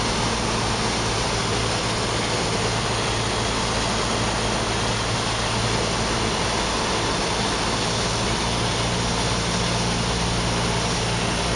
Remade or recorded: recorded